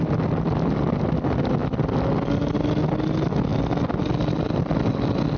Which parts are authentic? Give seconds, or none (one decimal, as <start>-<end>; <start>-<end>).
0.0-1.6; 2.2-3.5; 4.2-5.4